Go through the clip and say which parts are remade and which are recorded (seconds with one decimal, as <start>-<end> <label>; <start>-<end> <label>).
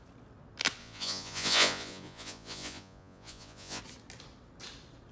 0.0-0.8 recorded; 0.8-3.8 remade; 3.8-5.1 recorded